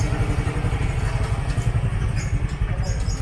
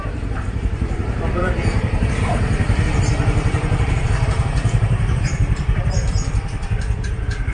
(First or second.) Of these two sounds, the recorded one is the first